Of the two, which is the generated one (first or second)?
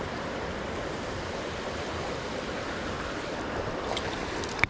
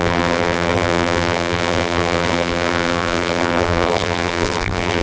second